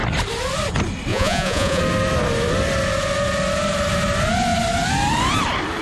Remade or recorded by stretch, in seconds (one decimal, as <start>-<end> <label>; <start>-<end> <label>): 0.0-1.1 recorded; 1.1-1.8 remade; 1.8-5.8 recorded